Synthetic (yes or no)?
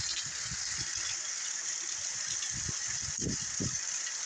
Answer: no